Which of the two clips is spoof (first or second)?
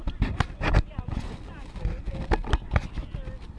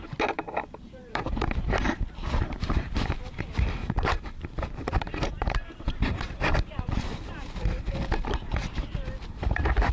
second